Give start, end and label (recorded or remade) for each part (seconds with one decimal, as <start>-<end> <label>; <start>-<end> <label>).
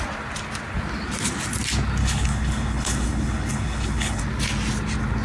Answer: 0.0-2.0 recorded; 2.0-4.2 remade; 4.2-5.2 recorded